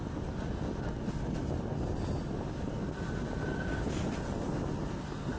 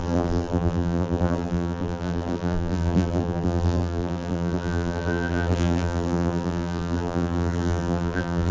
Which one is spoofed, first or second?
second